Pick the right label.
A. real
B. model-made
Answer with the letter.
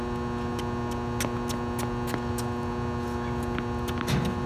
A